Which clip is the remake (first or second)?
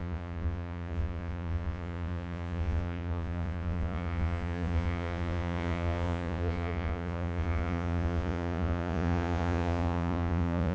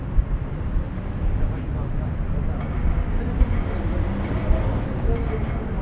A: first